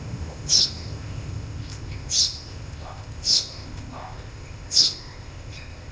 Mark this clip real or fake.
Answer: fake